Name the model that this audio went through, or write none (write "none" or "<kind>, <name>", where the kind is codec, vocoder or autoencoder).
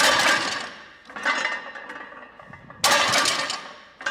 none